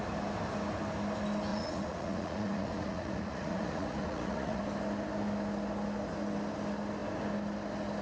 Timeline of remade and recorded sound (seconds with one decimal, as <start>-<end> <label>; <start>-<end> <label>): 0.0-1.5 recorded; 1.5-4.6 remade; 4.6-8.0 recorded